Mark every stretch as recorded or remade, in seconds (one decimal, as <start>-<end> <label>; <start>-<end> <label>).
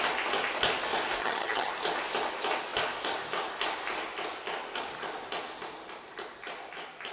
0.0-1.2 recorded; 1.2-1.7 remade; 1.7-7.1 recorded